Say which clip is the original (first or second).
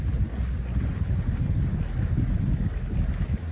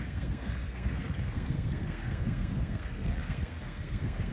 first